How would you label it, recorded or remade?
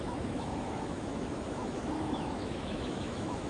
remade